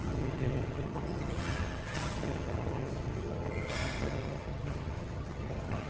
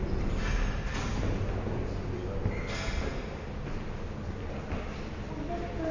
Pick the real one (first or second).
second